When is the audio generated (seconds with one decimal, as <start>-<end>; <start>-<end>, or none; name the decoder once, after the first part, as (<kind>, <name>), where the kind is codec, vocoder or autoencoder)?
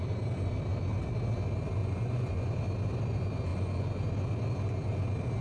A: 1.8-2.6 (vocoder, Vocos); 3.5-4.0